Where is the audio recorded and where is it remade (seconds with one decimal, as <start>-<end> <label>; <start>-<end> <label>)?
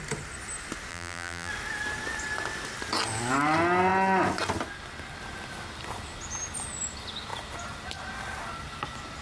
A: 0.0-0.9 recorded; 0.9-1.5 remade; 1.5-9.2 recorded